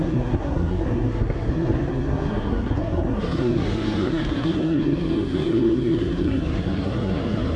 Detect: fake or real fake